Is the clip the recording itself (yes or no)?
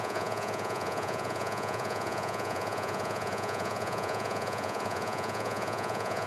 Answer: no